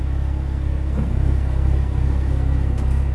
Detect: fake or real fake